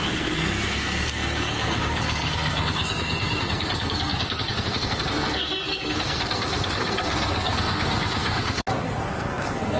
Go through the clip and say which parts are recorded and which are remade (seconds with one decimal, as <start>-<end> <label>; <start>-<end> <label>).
0.0-9.8 remade